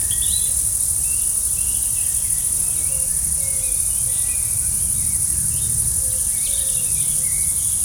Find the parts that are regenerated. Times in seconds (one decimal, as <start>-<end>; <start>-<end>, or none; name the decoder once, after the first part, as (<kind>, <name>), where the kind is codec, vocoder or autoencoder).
none